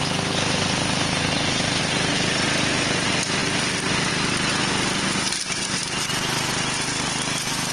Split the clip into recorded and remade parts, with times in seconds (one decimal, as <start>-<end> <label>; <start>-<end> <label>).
0.0-7.7 recorded